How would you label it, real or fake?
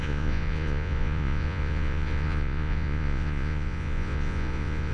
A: fake